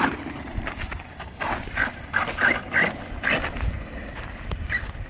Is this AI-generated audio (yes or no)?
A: no